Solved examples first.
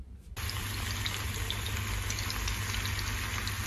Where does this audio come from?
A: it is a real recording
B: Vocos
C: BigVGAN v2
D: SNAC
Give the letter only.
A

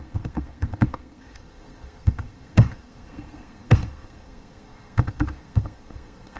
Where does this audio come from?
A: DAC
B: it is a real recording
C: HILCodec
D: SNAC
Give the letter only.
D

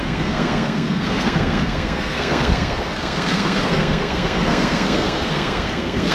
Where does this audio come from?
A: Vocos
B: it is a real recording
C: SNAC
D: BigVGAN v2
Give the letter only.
C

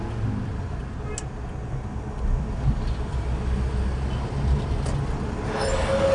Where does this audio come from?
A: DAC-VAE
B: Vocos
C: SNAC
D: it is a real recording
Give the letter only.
D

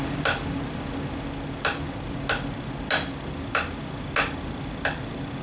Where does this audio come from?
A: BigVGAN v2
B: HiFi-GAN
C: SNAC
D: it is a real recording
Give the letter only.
D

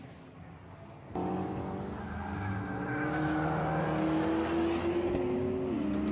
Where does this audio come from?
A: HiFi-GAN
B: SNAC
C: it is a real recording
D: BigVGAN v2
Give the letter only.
C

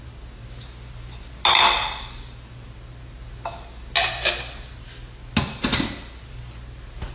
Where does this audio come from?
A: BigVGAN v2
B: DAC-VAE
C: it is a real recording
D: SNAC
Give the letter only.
C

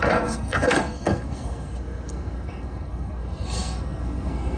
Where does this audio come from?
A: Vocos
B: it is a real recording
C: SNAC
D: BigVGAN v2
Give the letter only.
C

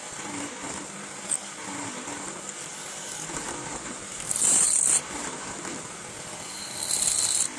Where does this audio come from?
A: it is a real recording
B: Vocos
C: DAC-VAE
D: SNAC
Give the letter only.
A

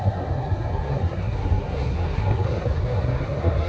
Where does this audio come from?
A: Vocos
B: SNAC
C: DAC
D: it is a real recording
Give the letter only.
B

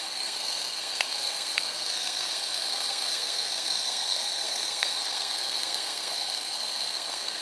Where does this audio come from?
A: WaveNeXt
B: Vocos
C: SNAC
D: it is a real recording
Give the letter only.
C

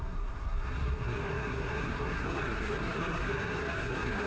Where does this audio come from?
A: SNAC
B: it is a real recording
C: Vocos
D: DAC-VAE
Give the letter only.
A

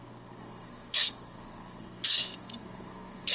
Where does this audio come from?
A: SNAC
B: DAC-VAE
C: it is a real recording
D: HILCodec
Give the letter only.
A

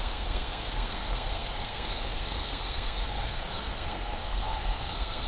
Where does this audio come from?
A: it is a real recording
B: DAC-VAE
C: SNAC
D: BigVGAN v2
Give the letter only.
C